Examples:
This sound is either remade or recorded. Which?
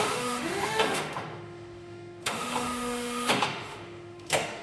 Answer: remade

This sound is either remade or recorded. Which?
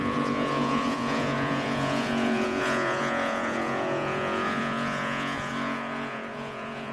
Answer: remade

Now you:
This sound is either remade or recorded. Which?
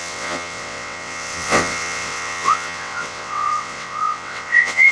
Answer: remade